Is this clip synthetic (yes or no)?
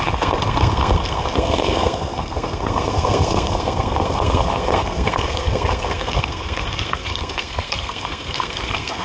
yes